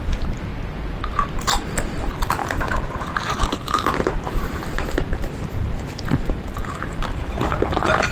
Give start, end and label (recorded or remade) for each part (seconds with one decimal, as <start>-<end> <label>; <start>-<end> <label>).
0.0-0.5 remade; 0.5-1.1 recorded; 1.1-8.1 remade